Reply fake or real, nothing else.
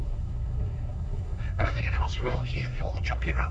fake